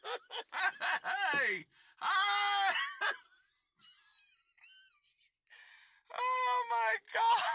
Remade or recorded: recorded